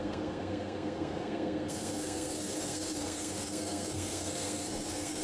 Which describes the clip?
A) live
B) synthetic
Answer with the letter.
B